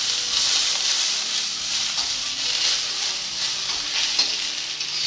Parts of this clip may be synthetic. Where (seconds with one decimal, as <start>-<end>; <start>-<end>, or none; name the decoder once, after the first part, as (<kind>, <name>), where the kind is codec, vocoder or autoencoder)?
0.6-3.7 (vocoder, BigVGAN v2)